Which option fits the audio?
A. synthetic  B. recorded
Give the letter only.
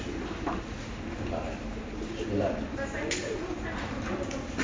A